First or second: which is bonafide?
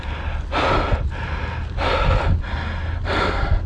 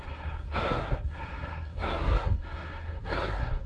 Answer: first